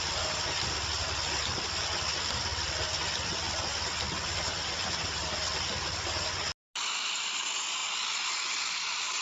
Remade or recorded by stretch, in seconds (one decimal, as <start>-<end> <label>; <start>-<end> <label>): 0.0-9.2 recorded